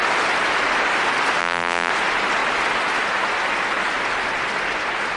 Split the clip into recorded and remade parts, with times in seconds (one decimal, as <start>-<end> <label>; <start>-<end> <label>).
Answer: 0.0-1.4 recorded; 1.4-1.9 remade; 1.9-5.2 recorded